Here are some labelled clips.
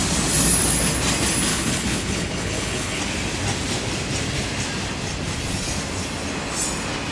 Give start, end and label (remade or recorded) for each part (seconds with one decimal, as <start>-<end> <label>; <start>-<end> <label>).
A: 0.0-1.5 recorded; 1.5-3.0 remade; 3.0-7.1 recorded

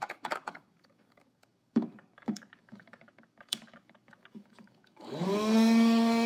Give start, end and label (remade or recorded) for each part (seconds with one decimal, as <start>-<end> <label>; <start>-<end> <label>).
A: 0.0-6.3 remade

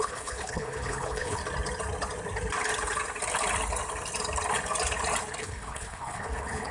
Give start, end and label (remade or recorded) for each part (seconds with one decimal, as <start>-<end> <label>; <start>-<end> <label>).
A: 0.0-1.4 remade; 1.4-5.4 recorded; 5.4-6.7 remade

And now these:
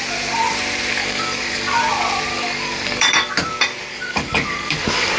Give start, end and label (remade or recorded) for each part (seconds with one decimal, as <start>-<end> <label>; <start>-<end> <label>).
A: 0.0-1.0 recorded; 1.0-1.8 remade; 1.8-2.3 recorded; 2.3-3.3 remade; 3.3-3.9 recorded; 3.9-5.2 remade

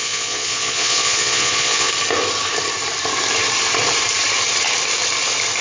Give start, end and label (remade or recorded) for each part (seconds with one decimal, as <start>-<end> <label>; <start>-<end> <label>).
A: 0.0-1.9 remade; 1.9-5.6 recorded